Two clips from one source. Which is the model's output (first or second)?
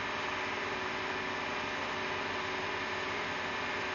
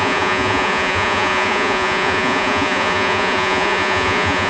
second